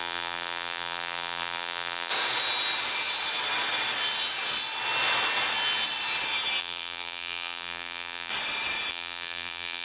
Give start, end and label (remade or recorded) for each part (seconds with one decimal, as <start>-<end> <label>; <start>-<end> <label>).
0.0-2.1 remade; 2.1-6.6 recorded; 6.6-8.3 remade; 8.3-8.9 recorded; 8.9-9.8 remade